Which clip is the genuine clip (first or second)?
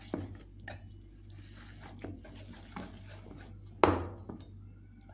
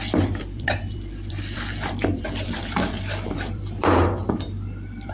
first